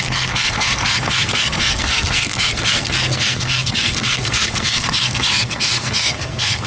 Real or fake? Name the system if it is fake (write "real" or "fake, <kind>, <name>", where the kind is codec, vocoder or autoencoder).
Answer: fake, codec, SNAC